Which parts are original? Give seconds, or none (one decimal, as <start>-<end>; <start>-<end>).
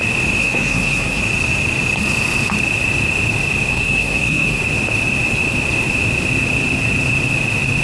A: 0.0-0.4; 1.2-3.7; 4.6-7.8